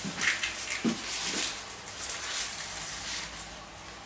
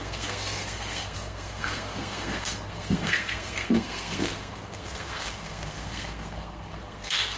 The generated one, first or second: second